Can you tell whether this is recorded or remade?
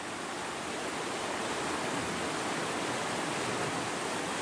recorded